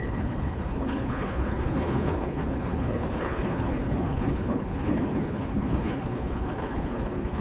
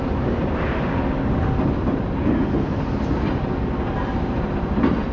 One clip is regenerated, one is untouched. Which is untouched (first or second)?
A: second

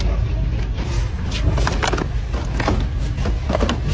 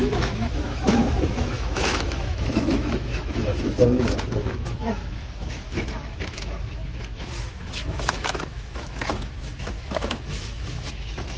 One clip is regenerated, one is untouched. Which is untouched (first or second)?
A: first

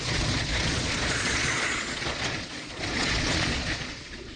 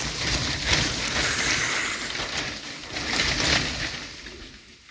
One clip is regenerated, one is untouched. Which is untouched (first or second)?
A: second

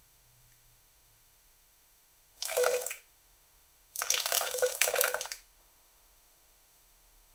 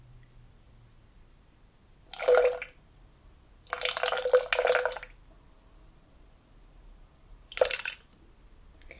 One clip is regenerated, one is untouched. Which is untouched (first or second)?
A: second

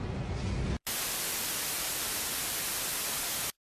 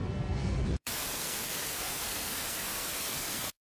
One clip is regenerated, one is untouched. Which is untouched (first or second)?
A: first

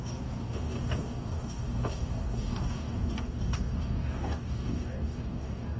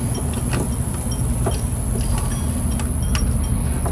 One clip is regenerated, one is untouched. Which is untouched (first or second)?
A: second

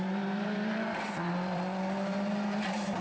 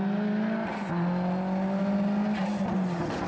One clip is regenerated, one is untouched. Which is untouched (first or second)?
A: second